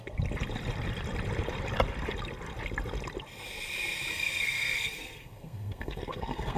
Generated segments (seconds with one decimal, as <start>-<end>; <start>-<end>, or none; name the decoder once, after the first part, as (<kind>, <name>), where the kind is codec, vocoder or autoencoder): 4.1-6.6 (codec, SNAC)